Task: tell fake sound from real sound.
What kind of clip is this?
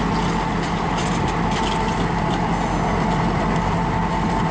real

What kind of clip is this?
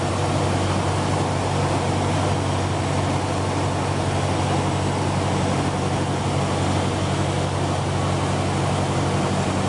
real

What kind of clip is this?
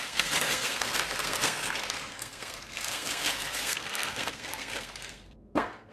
fake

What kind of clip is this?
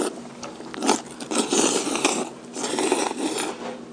real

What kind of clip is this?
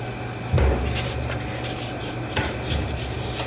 real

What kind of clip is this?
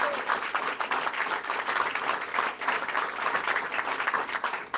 real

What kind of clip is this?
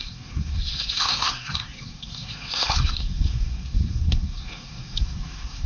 fake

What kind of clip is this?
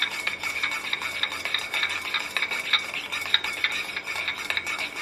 real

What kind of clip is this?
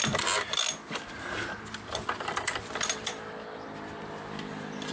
real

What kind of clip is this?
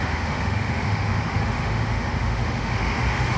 fake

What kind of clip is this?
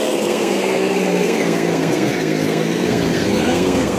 fake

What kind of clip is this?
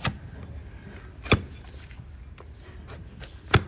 real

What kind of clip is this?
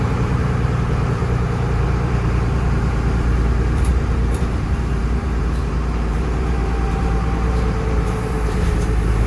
fake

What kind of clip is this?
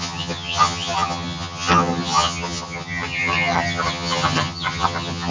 fake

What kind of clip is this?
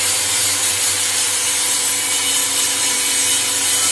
fake